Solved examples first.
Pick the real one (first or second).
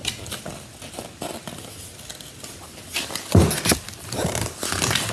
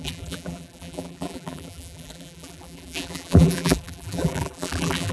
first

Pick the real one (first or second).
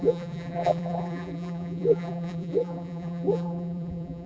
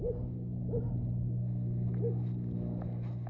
second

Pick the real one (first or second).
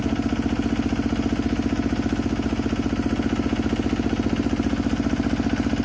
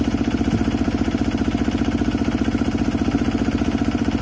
first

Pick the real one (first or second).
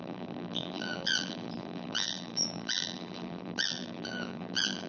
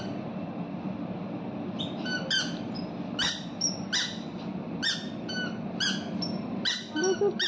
second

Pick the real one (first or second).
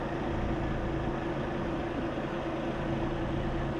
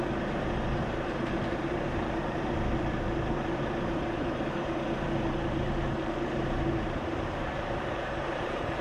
first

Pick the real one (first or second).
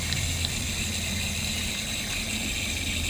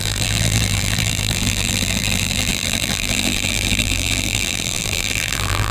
first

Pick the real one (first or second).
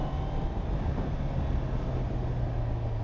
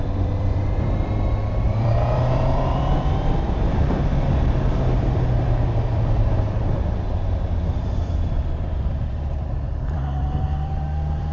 first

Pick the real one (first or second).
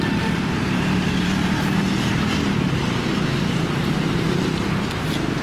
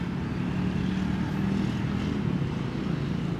second